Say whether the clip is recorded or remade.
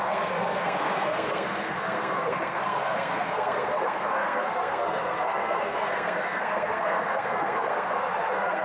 remade